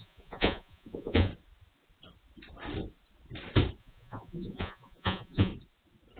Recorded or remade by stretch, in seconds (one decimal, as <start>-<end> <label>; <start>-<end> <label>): 0.0-1.3 remade; 1.3-3.8 recorded; 3.8-5.5 remade; 5.5-6.2 recorded